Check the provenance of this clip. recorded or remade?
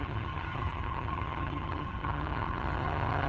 remade